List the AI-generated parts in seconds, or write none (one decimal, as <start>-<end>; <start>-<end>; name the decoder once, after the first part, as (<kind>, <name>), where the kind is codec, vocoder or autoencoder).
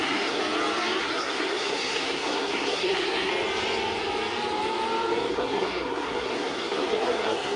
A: 0.0-0.4 (codec, SNAC); 1.0-3.3; 5.3-7.6